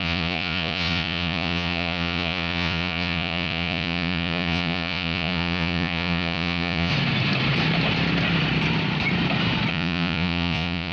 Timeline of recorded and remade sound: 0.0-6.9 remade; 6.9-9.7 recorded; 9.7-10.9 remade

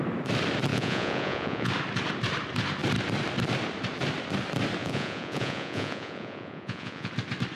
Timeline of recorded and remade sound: 0.0-0.7 recorded; 0.7-1.7 remade; 1.7-4.8 recorded; 4.8-7.1 remade; 7.1-7.6 recorded